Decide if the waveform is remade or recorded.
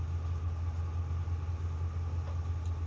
recorded